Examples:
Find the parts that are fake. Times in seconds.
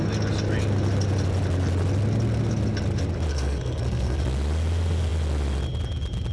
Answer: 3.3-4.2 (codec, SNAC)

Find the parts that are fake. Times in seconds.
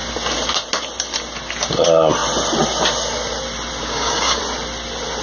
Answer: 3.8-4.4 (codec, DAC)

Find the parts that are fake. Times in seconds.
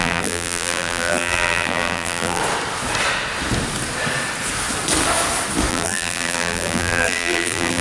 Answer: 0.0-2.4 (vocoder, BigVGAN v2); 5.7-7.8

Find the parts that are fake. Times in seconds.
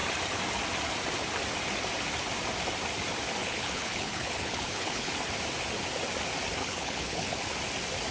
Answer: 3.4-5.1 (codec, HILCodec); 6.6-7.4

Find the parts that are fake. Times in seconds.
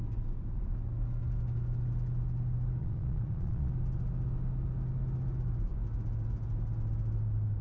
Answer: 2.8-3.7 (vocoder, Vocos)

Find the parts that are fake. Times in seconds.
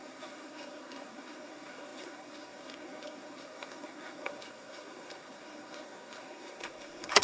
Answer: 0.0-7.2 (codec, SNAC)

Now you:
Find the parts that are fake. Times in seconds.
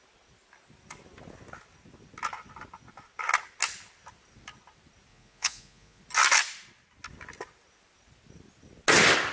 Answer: 5.1-6.0 (vocoder, Vocos)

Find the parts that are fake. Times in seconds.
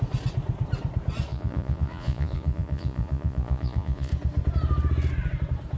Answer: 1.3-4.1 (vocoder, Vocos)